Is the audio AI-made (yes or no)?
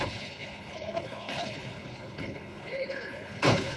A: yes